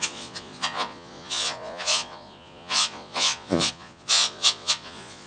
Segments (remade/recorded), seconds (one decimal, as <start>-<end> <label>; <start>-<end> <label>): 0.0-5.3 remade